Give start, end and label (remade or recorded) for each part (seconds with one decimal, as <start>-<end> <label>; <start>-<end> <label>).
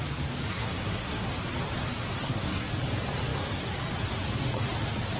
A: 0.0-0.5 recorded; 0.5-1.3 remade; 1.3-2.2 recorded; 2.2-2.7 remade; 2.7-5.2 recorded